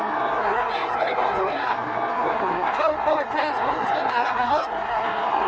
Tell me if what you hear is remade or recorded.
remade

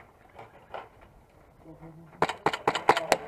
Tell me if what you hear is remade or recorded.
recorded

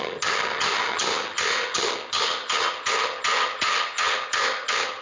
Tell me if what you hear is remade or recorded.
remade